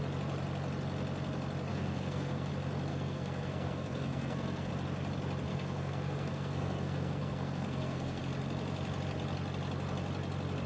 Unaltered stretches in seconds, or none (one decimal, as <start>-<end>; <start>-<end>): 0.0-1.7; 2.5-2.9; 4.7-5.5; 8.2-10.7